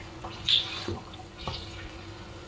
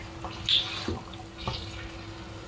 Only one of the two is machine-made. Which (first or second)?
first